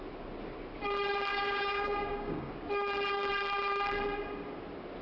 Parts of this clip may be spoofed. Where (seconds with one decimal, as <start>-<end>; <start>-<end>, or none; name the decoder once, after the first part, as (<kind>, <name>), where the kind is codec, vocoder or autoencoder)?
1.3-2.5 (codec, DAC)

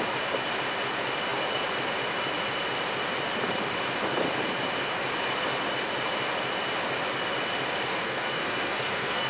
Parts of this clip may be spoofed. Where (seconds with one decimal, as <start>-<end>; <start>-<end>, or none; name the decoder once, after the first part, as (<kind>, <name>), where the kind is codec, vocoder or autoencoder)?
7.9-9.3 (codec, SNAC)